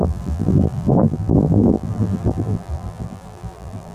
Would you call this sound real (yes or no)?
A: no